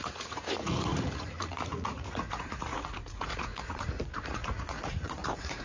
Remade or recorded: remade